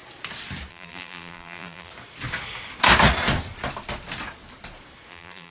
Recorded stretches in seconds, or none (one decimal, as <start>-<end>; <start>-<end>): 0.0-0.7; 1.9-5.1